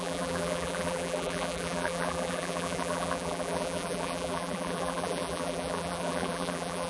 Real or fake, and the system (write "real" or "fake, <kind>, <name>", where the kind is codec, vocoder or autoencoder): fake, vocoder, BigVGAN v2